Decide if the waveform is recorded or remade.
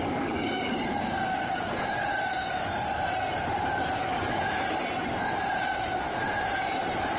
remade